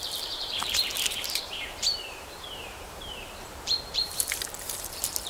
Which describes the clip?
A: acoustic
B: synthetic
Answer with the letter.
B